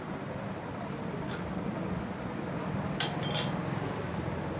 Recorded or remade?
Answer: recorded